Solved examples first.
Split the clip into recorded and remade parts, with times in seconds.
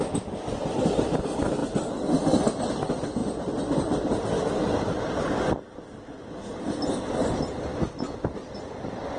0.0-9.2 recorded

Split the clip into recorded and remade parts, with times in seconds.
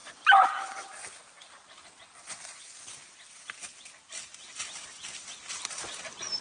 0.0-6.4 recorded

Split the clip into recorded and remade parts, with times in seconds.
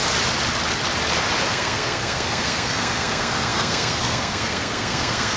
0.0-1.5 recorded; 1.5-5.4 remade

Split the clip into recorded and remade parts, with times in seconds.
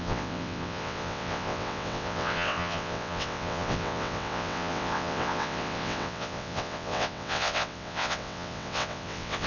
0.0-9.5 remade